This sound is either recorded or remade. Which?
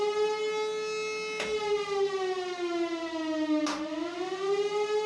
recorded